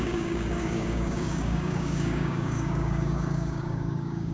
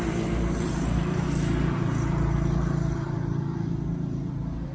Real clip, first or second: second